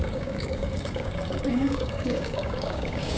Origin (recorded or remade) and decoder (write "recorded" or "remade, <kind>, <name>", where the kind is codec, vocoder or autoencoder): remade, codec, DAC